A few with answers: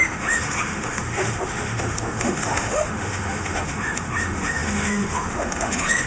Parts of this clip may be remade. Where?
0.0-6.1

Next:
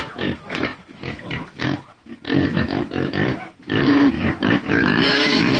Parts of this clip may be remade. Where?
0.0-5.6

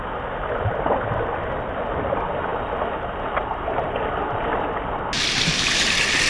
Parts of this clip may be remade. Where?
none

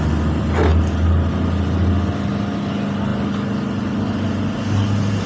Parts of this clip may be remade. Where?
none

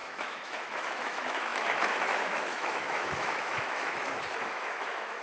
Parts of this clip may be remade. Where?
0.0-5.2

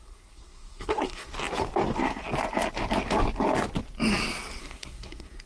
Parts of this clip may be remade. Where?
0.0-1.3; 4.6-5.5